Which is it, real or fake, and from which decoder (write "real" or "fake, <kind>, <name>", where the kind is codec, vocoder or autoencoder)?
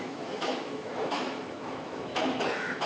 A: fake, autoencoder, DAC-VAE